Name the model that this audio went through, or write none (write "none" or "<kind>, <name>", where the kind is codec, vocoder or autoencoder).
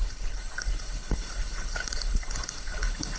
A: codec, HILCodec